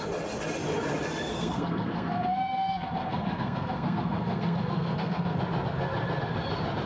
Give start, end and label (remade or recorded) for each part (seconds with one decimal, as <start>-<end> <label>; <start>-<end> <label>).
0.0-1.3 recorded; 1.3-5.4 remade; 5.4-6.9 recorded